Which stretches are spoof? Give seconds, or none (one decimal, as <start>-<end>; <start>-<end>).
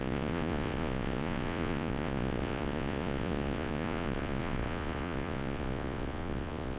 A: 0.0-6.8